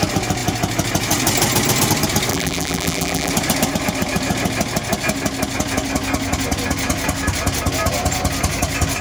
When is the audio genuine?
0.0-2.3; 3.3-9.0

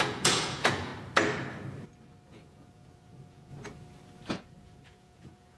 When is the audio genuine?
0.9-2.3; 3.5-4.3

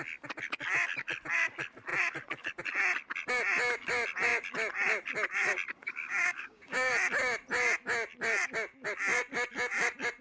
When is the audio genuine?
0.0-5.8; 6.9-10.2

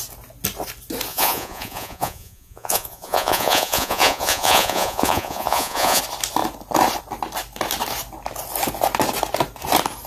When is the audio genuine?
0.0-1.1; 6.0-10.1

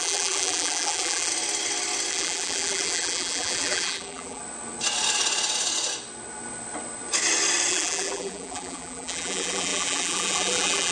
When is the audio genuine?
1.3-2.1; 4.4-7.7

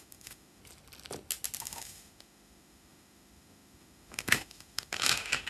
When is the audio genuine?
0.6-1.6